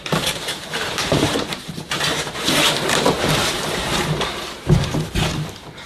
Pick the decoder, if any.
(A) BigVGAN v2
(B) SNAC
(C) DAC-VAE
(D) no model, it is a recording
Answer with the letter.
A